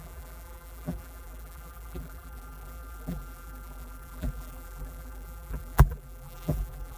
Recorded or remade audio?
remade